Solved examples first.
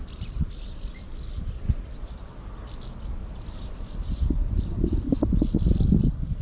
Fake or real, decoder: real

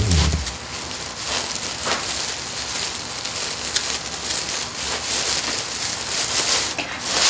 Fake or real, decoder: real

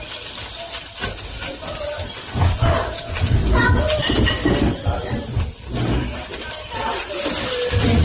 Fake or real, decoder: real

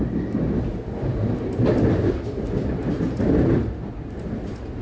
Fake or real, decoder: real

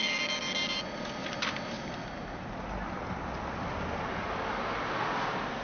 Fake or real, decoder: real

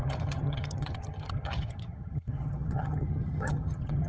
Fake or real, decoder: fake, vocoder, HiFi-GAN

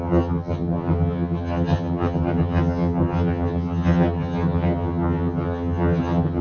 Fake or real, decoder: fake, vocoder, HiFi-GAN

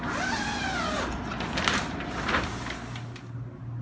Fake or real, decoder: real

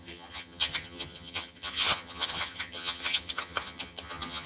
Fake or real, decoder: fake, vocoder, HiFi-GAN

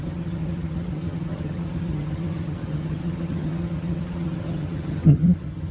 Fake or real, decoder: fake, vocoder, HiFi-GAN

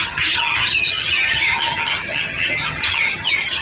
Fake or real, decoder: fake, vocoder, HiFi-GAN